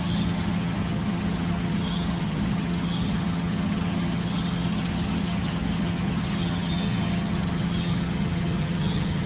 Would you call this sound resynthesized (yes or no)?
yes